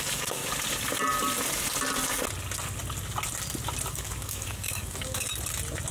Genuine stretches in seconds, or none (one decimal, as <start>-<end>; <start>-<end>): 0.4-3.9; 5.3-5.9